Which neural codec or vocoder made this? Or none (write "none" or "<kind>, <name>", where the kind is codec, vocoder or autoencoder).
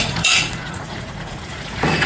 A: vocoder, Vocos